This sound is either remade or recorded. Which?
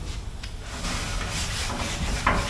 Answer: recorded